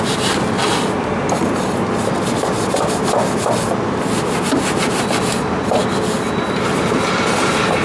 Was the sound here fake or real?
real